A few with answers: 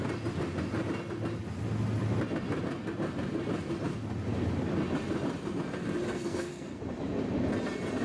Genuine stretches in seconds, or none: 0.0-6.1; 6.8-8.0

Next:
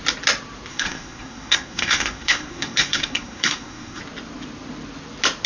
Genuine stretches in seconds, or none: 0.0-0.7; 4.0-5.5

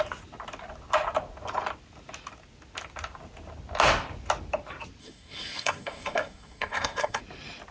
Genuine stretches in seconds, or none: 0.0-5.0; 7.2-7.7

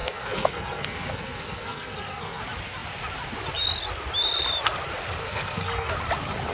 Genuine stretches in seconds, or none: 2.4-5.2; 5.9-6.5

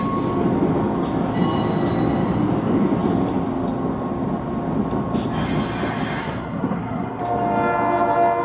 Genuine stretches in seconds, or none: 0.0-6.2; 7.2-8.4